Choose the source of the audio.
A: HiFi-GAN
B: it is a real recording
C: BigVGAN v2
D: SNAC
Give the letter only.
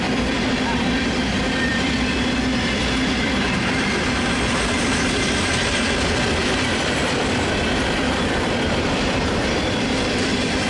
C